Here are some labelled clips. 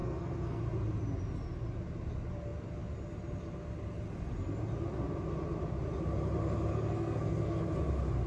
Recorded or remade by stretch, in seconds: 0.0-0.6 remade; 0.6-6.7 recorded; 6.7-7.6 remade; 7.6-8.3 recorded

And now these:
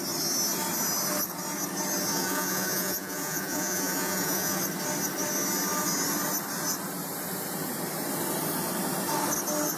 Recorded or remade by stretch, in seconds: 0.0-2.1 recorded; 2.1-4.6 remade; 4.6-9.8 recorded

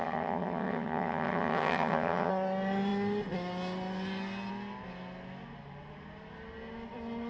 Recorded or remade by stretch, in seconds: 0.0-2.3 remade; 2.3-7.3 recorded

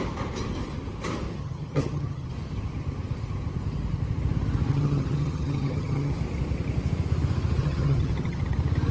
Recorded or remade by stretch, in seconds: 0.0-1.3 recorded; 1.3-2.3 remade; 2.3-4.7 recorded; 4.7-6.1 remade; 6.1-7.6 recorded; 7.6-8.4 remade; 8.4-8.9 recorded

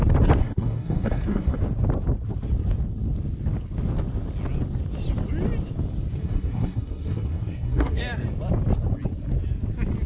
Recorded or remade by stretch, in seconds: 0.0-0.4 recorded; 0.4-1.6 remade; 1.6-6.2 recorded; 6.2-8.0 remade; 8.0-10.1 recorded